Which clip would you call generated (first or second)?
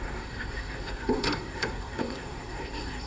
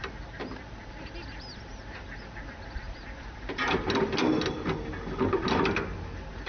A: first